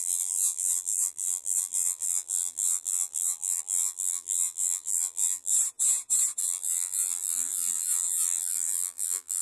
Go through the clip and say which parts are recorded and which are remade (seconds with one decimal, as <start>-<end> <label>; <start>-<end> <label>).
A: 0.0-5.5 remade; 5.5-6.4 recorded; 6.4-9.4 remade